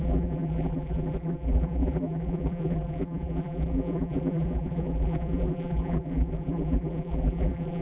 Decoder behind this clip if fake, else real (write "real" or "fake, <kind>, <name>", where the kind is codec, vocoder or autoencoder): fake, vocoder, BigVGAN v2